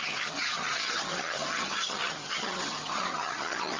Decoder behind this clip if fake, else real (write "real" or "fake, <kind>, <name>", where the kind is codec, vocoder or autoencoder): fake, vocoder, HiFi-GAN